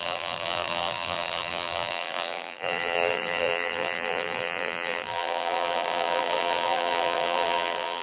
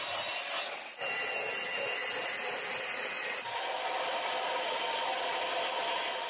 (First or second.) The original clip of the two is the second